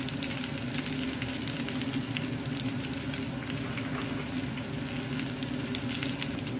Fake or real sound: real